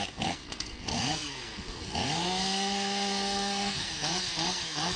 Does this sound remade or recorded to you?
remade